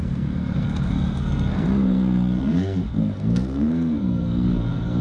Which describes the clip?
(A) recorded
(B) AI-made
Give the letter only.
B